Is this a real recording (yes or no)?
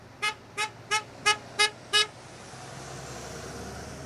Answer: yes